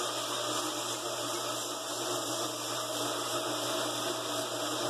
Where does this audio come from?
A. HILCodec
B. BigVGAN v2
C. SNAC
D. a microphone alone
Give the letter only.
D